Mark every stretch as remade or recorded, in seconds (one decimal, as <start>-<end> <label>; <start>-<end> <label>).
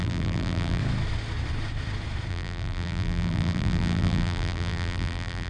0.0-0.8 remade; 0.8-2.3 recorded; 2.3-5.5 remade